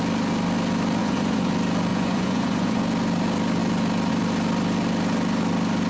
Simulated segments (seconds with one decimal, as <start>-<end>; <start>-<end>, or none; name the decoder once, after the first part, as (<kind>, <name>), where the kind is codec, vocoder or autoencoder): 1.0-1.5 (vocoder, Vocos); 1.9-2.8